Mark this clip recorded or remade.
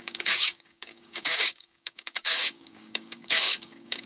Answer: remade